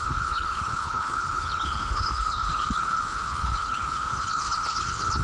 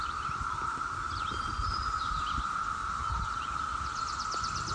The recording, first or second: second